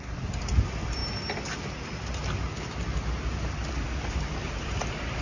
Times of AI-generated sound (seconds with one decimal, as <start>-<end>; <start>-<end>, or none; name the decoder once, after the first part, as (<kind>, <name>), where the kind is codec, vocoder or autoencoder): none